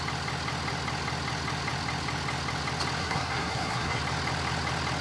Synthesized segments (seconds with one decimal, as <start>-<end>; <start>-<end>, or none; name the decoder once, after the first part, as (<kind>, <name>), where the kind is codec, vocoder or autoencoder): 3.0-4.0 (codec, SNAC)